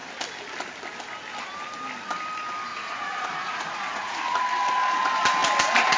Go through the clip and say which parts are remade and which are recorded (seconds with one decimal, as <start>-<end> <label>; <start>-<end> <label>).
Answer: 0.0-2.7 recorded; 2.7-4.4 remade; 4.4-6.0 recorded

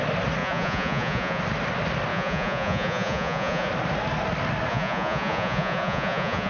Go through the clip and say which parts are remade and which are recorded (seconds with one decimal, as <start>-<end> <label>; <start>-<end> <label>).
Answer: 0.0-0.4 recorded; 0.4-1.4 remade; 1.4-2.1 recorded; 2.1-3.7 remade; 3.7-4.7 recorded; 4.7-6.5 remade

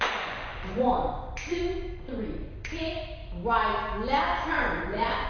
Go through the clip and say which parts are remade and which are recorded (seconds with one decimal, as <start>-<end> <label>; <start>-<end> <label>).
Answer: 0.0-3.2 remade; 3.2-4.5 recorded; 4.5-5.3 remade

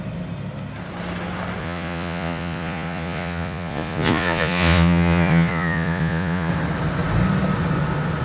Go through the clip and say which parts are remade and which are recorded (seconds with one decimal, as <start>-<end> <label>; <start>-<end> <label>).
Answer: 0.0-1.6 recorded; 1.6-6.5 remade; 6.5-8.2 recorded

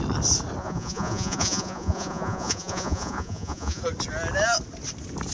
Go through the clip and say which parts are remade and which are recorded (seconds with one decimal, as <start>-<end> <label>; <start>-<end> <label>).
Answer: 0.0-0.6 recorded; 0.6-3.8 remade; 3.8-5.3 recorded

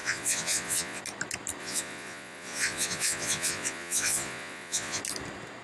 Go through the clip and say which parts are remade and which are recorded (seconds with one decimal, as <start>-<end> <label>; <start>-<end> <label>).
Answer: 0.0-1.0 remade; 1.0-1.6 recorded; 1.6-5.0 remade; 5.0-5.6 recorded

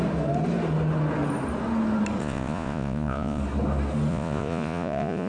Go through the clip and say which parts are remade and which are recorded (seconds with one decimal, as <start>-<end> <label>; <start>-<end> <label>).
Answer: 0.0-2.2 recorded; 2.2-3.4 remade; 3.4-4.1 recorded; 4.1-5.3 remade

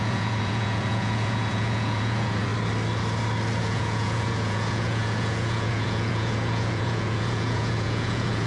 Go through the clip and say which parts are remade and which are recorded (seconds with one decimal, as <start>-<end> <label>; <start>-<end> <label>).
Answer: 0.0-2.5 remade; 2.5-3.6 recorded; 3.6-8.5 remade